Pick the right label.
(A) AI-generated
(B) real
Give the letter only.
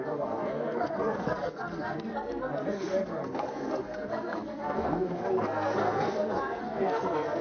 A